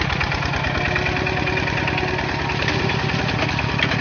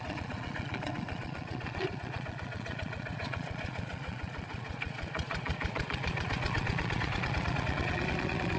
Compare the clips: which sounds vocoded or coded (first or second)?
second